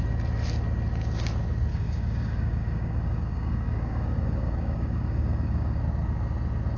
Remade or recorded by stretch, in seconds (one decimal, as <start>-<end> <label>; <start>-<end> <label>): 0.0-1.7 recorded; 1.7-5.8 remade; 5.8-6.8 recorded